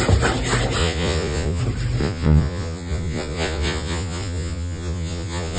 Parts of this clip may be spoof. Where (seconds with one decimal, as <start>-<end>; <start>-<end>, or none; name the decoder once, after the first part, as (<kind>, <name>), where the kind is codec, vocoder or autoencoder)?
0.8-1.6 (vocoder, Vocos); 2.0-5.6